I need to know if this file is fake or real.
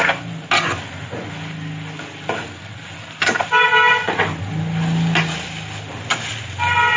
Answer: real